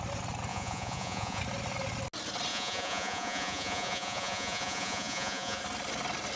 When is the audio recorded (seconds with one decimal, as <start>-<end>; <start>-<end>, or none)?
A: 0.0-0.5; 1.4-2.5; 5.6-6.4